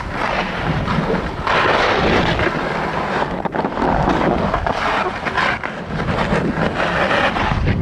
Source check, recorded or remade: recorded